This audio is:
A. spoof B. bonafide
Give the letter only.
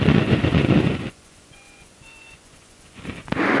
A